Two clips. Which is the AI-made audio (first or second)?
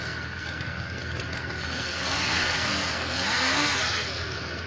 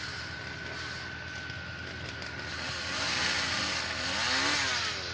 first